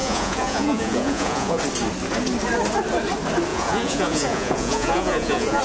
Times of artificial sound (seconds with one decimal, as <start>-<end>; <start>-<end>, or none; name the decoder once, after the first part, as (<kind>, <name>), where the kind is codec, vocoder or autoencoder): 0.0-1.6 (vocoder, Vocos); 3.5-5.6